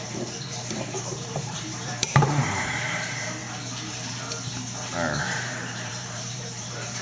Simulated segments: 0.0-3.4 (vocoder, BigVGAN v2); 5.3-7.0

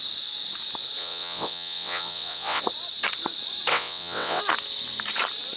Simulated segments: 1.0-2.6 (vocoder, WaveNeXt); 3.7-4.4

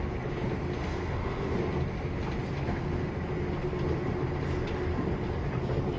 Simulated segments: 0.8-1.6 (codec, SNAC); 2.6-3.1

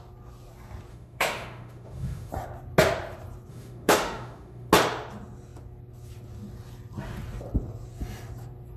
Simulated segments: 0.9-2.3 (autoencoder, DAC-VAE); 3.5-4.7